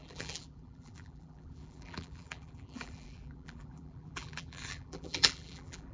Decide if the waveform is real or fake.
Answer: fake